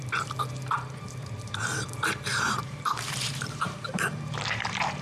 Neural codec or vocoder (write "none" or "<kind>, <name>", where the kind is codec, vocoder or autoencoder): vocoder, BigVGAN v2